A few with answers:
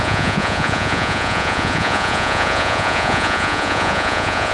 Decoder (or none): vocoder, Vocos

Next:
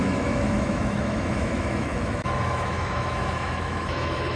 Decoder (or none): autoencoder, DAC-VAE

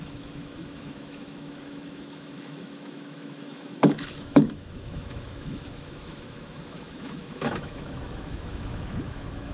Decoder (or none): autoencoder, DAC-VAE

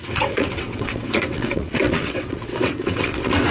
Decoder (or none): vocoder, WaveNeXt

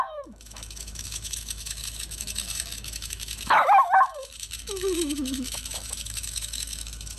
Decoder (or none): autoencoder, DAC-VAE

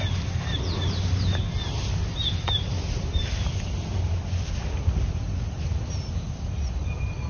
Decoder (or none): none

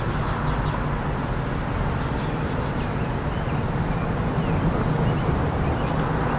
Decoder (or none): none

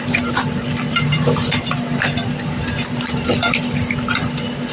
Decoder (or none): vocoder, BigVGAN v2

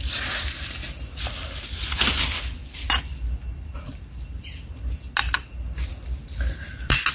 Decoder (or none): none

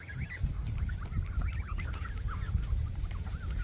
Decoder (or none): none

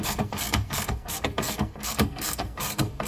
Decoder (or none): codec, SNAC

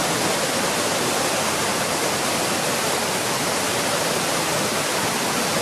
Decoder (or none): none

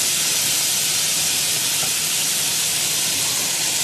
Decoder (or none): none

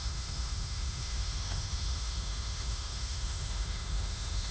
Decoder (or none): autoencoder, DAC-VAE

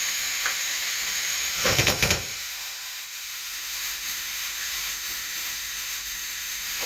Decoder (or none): autoencoder, DAC-VAE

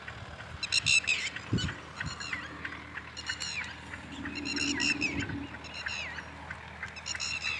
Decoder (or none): none